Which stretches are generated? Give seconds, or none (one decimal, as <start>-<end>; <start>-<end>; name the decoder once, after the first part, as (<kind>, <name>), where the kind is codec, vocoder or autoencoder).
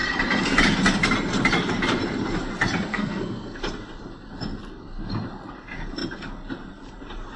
2.9-3.6 (codec, SNAC)